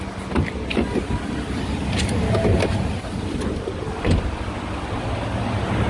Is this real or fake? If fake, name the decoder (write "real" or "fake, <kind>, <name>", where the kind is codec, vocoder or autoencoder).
real